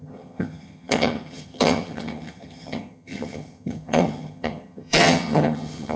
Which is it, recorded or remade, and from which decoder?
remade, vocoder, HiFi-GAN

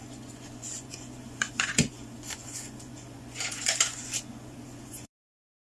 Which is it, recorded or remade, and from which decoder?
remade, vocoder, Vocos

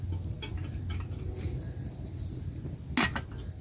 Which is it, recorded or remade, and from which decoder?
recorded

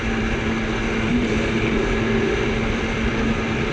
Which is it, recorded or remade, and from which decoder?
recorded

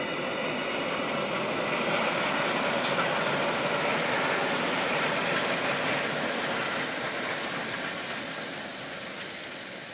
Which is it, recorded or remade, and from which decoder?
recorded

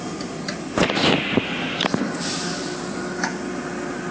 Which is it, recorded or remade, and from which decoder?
recorded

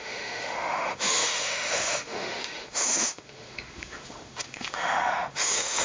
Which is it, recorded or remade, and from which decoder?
remade, autoencoder, DAC-VAE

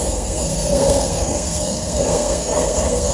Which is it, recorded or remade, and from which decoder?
remade, codec, SNAC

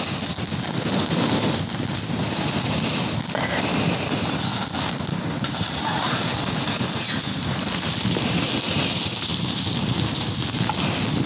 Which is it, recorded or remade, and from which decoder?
recorded